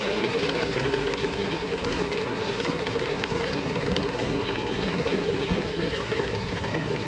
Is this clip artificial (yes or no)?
yes